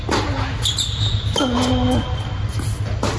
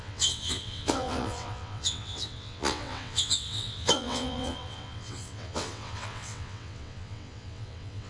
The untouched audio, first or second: first